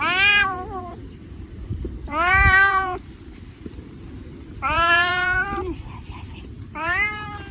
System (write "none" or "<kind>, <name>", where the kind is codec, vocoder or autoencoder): vocoder, BigVGAN v2